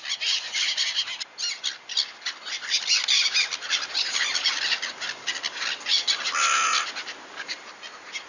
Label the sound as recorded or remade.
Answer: recorded